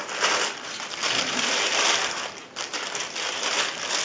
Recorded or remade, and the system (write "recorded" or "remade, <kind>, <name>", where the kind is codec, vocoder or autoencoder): remade, vocoder, BigVGAN v2